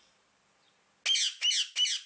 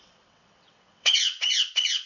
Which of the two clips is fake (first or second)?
second